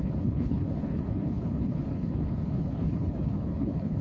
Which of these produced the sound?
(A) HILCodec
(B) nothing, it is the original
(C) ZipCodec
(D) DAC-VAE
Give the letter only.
A